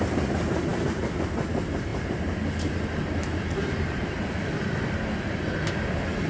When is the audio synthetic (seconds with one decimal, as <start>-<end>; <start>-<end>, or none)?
none